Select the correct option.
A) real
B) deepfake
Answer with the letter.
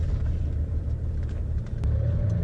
B